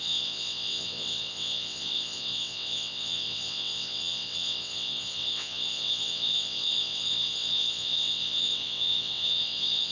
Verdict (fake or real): fake